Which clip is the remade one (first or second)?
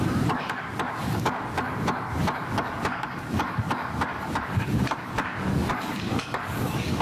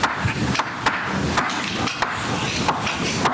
first